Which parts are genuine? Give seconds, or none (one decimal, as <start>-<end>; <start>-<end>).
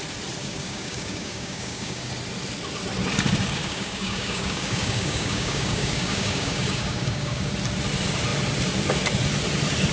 0.0-0.4; 2.1-3.6; 7.5-9.9